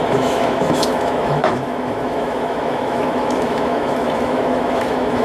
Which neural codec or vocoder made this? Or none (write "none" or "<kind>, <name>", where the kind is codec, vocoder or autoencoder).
autoencoder, DAC-VAE